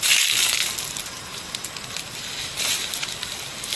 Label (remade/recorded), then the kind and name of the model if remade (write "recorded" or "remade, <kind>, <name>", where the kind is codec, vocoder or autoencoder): recorded